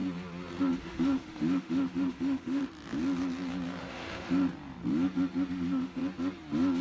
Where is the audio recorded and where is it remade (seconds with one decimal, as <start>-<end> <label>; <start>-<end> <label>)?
0.0-0.8 recorded; 0.8-2.6 remade; 2.6-3.8 recorded; 3.8-4.4 remade; 4.4-5.5 recorded; 5.5-6.0 remade; 6.0-6.8 recorded